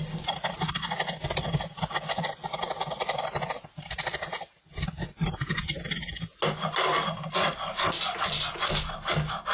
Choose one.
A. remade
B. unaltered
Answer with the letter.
B